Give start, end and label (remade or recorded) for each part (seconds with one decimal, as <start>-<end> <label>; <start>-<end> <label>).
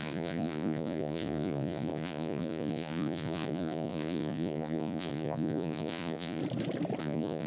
0.0-6.4 remade; 6.4-7.0 recorded; 7.0-7.5 remade